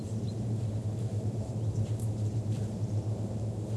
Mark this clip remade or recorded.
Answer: remade